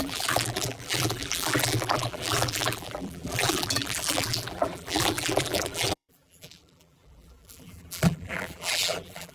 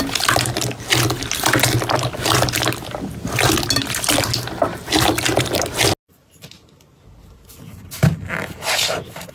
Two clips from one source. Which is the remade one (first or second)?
first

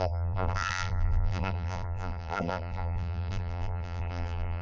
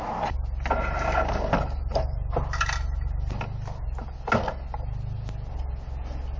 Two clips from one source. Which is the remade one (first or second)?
first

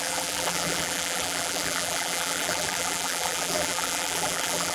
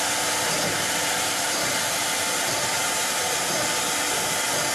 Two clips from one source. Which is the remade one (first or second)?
first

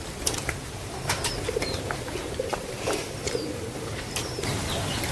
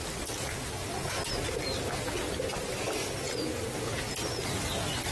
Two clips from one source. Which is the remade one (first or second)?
first